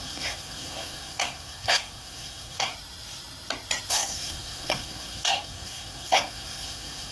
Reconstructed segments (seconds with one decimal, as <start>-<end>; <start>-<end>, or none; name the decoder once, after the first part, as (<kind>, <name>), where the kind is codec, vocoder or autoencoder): 0.0-2.7 (codec, SNAC); 3.9-7.1